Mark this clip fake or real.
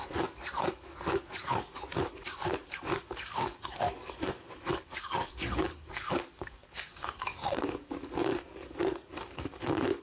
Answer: fake